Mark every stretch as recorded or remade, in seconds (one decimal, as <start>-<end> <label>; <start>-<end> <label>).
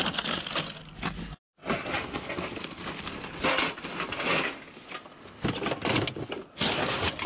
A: 0.0-7.3 recorded